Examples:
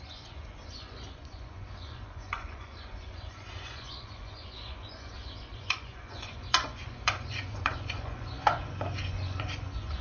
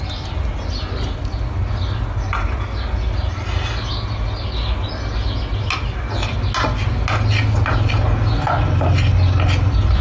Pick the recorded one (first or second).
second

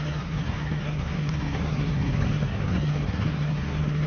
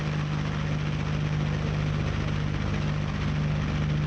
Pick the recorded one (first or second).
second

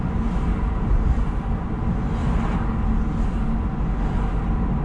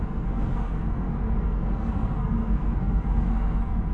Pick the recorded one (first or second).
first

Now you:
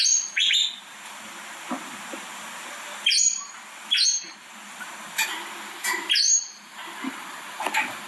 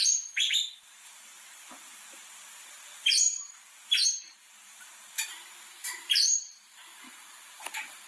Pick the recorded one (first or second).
first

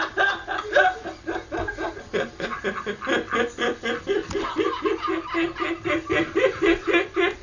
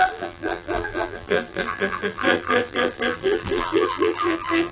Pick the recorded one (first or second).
first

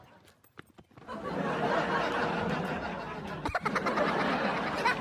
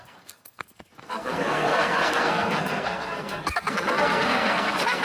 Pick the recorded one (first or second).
first